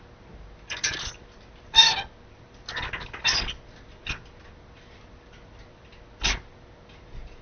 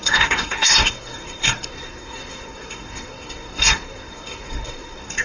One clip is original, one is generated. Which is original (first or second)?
first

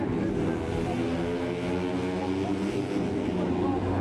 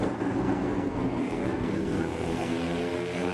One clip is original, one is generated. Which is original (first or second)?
first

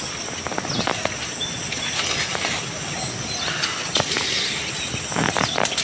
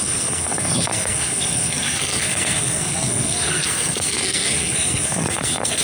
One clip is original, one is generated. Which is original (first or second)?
first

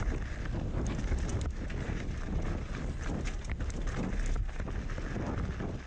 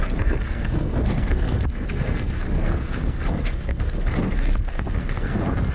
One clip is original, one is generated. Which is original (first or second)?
first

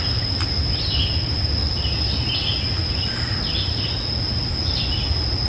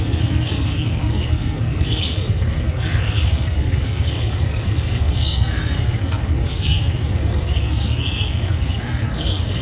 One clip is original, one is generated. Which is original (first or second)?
first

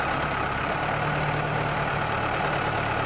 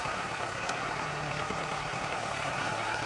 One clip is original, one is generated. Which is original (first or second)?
first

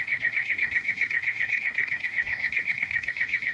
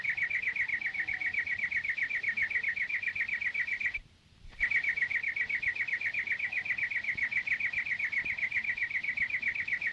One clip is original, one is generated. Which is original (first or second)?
second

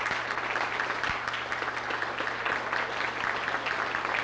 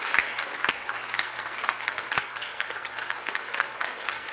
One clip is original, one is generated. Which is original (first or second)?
first